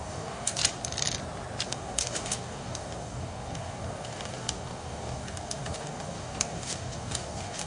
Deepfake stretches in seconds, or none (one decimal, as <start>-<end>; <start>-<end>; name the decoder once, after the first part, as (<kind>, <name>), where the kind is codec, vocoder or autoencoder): 0.0-0.6 (codec, DAC); 1.6-7.7